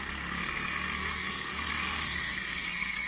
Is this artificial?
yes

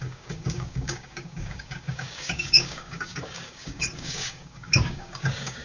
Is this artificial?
yes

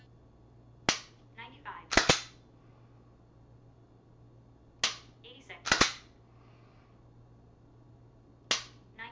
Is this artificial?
no